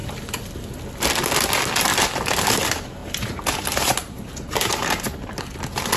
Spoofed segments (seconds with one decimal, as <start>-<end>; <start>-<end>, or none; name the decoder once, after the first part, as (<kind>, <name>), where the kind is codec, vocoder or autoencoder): 3.0-5.4 (vocoder, BigVGAN v2)